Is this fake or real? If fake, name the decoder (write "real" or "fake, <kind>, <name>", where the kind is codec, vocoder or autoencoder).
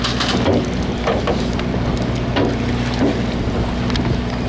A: real